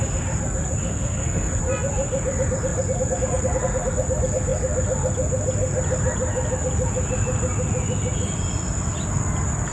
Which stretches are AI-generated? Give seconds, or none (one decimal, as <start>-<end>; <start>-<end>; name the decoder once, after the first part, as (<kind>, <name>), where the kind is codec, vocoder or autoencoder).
0.9-1.6 (codec, SNAC)